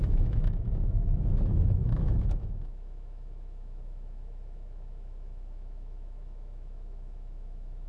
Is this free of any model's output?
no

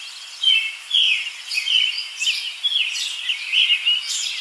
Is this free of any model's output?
yes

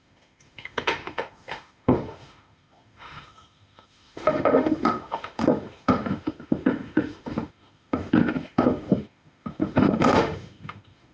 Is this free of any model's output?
no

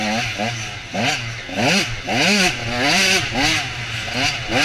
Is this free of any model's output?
yes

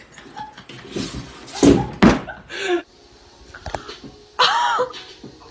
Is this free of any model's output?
yes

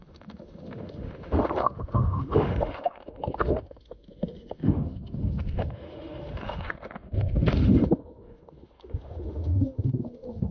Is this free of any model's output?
no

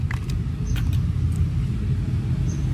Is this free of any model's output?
yes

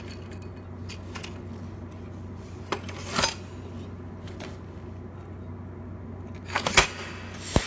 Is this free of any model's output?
yes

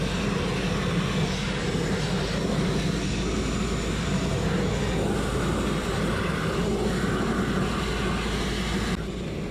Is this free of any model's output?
yes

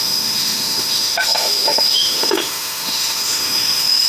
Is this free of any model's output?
no